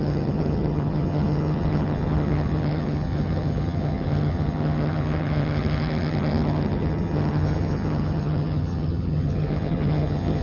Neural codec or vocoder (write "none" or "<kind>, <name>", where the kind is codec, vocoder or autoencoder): vocoder, HiFi-GAN